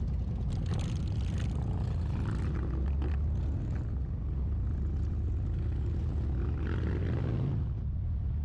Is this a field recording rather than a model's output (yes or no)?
yes